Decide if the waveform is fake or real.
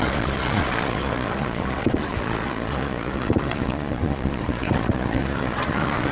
fake